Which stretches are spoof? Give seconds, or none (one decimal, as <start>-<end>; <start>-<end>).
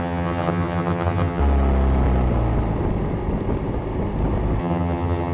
0.0-1.4; 4.6-5.3